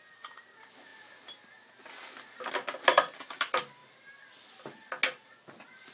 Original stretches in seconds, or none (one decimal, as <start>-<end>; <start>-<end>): 0.0-5.9

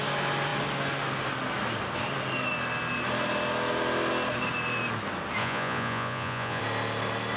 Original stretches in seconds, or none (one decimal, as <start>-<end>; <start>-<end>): 0.0-5.4; 6.6-7.4